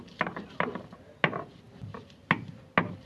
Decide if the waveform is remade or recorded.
recorded